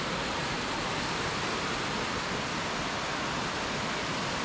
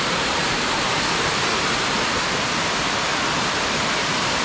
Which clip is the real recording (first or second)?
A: first